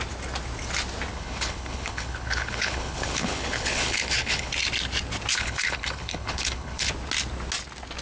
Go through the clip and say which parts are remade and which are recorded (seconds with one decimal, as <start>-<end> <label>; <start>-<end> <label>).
0.0-1.1 recorded; 1.1-4.5 remade; 4.5-5.3 recorded; 5.3-6.9 remade; 6.9-8.0 recorded